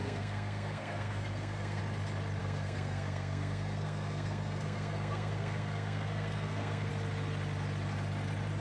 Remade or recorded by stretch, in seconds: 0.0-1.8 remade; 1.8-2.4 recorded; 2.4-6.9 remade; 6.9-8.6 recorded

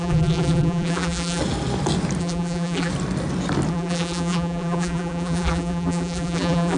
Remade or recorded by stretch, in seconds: 0.0-1.4 remade; 1.4-2.2 recorded; 2.2-2.9 remade; 2.9-3.7 recorded; 3.7-6.8 remade

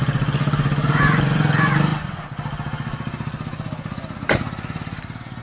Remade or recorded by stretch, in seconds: 0.0-1.9 recorded; 1.9-5.4 remade

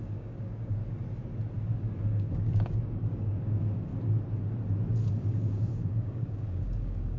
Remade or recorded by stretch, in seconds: 0.0-0.8 remade; 0.8-1.6 recorded; 1.6-3.9 remade; 3.9-5.1 recorded; 5.1-7.2 remade

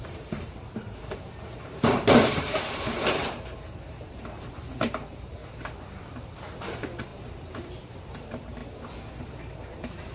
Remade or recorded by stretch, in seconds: 0.0-5.4 remade; 5.4-6.0 recorded; 6.0-8.6 remade; 8.6-9.2 recorded; 9.2-10.1 remade

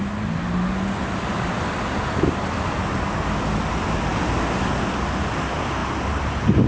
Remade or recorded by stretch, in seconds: 0.0-6.7 recorded